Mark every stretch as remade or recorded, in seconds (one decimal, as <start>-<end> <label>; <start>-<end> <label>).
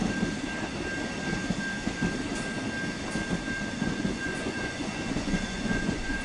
0.0-3.7 recorded; 3.7-6.2 remade